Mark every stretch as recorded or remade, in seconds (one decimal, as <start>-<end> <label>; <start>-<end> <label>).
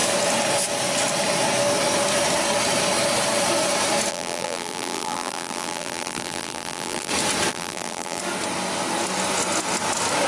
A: 0.0-4.1 recorded; 4.1-7.1 remade; 7.1-7.5 recorded; 7.5-8.2 remade; 8.2-10.3 recorded